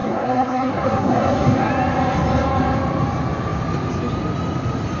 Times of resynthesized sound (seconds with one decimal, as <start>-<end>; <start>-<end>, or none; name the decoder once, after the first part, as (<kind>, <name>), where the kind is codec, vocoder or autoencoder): 0.0-1.7 (codec, SNAC)